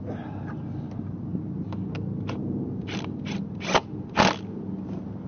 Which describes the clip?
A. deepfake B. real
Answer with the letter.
B